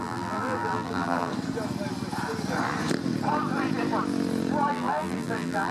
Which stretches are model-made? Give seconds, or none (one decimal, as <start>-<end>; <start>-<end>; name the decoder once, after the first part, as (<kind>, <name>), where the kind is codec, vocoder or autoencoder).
0.0-1.3 (vocoder, BigVGAN v2); 4.7-5.7